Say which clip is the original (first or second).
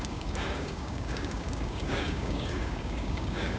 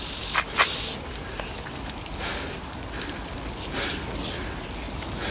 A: second